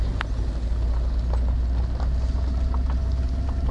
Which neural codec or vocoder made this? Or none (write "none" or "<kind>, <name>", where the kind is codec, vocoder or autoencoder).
none